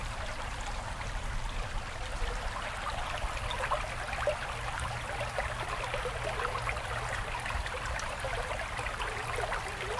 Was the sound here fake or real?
real